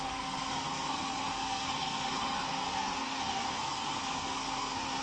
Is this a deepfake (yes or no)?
yes